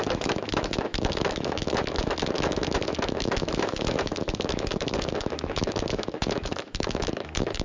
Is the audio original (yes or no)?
no